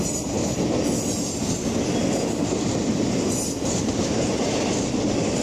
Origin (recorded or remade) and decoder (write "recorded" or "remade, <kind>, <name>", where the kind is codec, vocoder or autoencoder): recorded